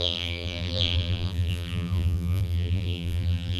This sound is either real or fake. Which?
fake